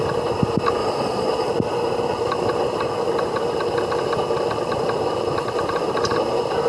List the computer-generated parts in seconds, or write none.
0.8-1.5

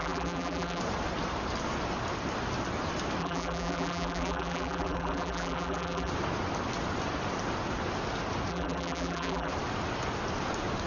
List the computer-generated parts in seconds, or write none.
0.0-0.8; 3.2-6.1; 8.5-9.5

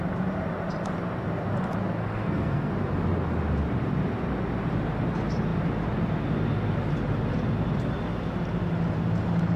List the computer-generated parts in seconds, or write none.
2.0-2.7